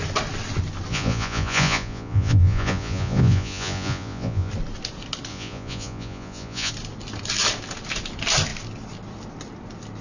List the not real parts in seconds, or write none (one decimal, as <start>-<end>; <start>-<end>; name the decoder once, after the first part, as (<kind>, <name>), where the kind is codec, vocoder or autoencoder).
0.9-4.5 (vocoder, Vocos); 5.3-6.7